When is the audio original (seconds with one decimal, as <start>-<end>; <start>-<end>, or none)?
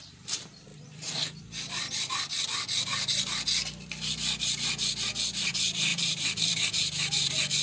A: 0.0-0.7; 1.4-5.9; 6.6-7.6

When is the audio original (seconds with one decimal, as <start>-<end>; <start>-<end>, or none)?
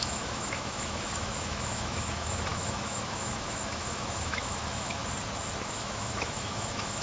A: 5.0-5.6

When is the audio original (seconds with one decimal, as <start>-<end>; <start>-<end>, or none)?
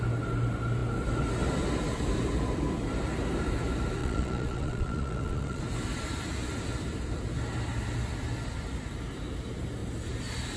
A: 0.0-4.0; 5.6-10.6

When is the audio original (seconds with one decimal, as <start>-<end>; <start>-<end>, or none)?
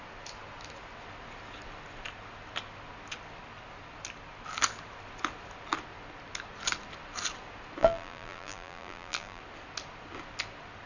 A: 0.0-7.8; 9.4-10.9